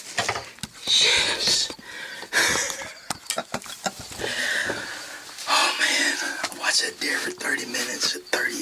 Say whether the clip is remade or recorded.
recorded